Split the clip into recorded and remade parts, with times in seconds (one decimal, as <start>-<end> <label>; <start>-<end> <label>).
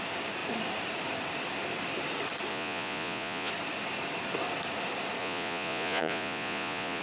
0.0-2.5 recorded; 2.5-3.5 remade; 3.5-5.2 recorded; 5.2-7.0 remade